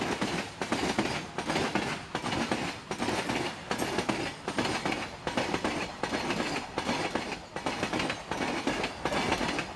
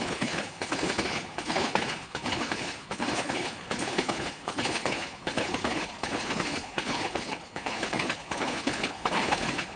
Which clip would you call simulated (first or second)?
second